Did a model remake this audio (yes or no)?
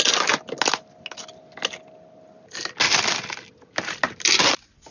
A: no